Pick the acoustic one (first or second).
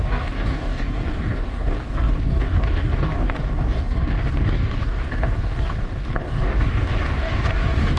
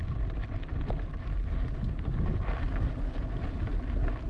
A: second